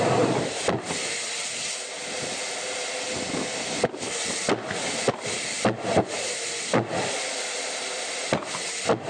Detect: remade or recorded recorded